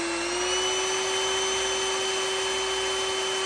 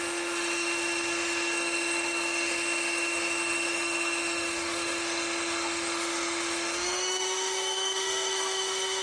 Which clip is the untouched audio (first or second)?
first